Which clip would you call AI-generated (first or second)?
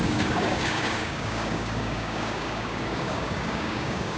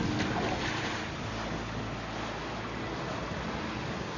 first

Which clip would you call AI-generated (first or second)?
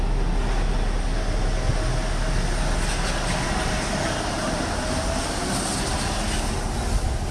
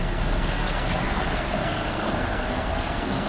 second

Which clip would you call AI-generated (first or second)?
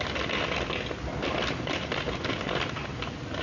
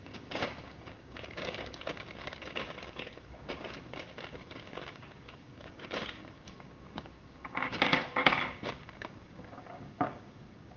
second